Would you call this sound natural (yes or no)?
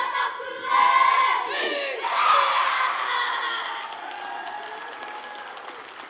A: yes